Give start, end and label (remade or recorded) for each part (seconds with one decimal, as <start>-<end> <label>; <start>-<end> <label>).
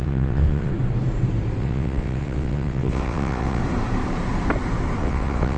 0.0-0.7 remade; 0.7-1.6 recorded; 1.6-3.6 remade; 3.6-5.0 recorded; 5.0-5.6 remade